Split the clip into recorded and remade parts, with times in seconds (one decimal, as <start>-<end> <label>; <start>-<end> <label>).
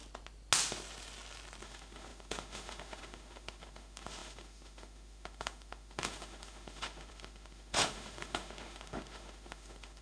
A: 0.0-1.6 recorded; 1.6-10.0 remade